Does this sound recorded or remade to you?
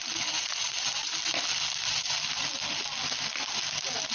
recorded